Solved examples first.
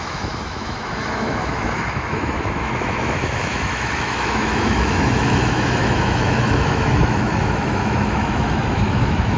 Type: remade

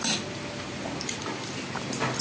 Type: recorded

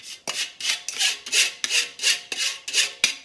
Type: recorded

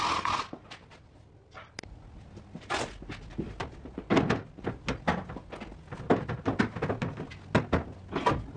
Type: recorded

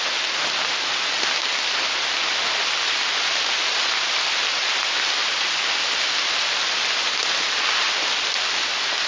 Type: recorded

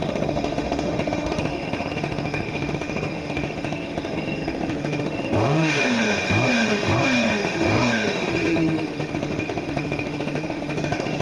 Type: remade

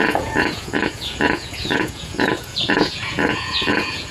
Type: remade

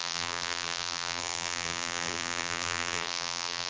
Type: remade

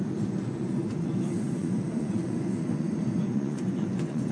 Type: remade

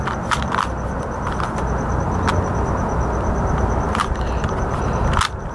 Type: recorded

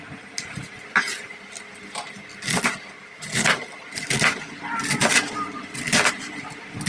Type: recorded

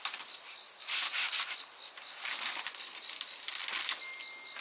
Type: recorded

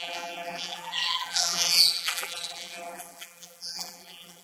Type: remade